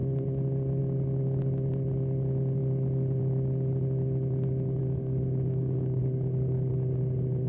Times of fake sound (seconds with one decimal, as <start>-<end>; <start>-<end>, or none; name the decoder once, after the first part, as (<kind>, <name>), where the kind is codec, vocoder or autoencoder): 4.8-6.0 (codec, DAC)

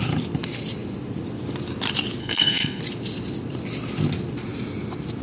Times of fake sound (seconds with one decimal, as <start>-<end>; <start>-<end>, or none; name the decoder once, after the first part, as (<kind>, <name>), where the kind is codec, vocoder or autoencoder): 2.2-2.8 (codec, SNAC)

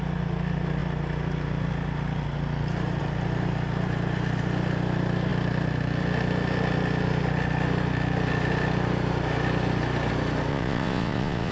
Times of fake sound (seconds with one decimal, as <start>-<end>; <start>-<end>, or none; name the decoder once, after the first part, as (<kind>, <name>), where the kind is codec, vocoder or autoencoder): 10.5-11.5 (vocoder, Vocos)

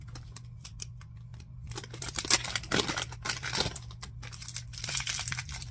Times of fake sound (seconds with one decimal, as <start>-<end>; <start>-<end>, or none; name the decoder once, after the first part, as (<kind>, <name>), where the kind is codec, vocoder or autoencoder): 0.0-5.7 (vocoder, BigVGAN v2)

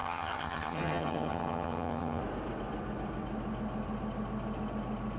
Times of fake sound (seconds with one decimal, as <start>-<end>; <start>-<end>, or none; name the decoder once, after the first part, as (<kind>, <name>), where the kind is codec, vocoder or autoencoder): 0.0-2.2 (vocoder, HiFi-GAN)